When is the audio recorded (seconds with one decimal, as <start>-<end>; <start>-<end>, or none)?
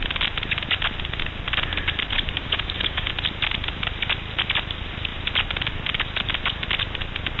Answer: 0.0-2.1; 3.1-7.4